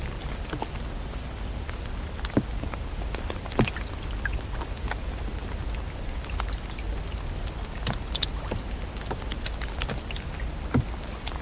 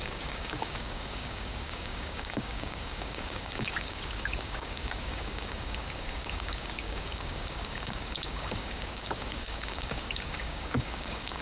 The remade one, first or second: second